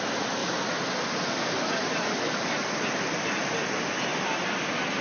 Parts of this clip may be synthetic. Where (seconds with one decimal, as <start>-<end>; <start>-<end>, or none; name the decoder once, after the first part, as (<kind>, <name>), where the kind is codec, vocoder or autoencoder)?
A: none